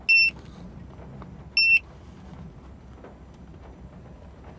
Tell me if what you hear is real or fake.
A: real